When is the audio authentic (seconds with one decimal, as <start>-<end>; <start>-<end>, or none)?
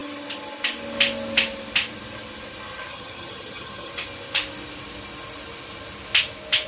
0.0-2.9; 3.9-6.7